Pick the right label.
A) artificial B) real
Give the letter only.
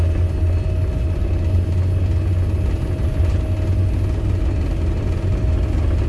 B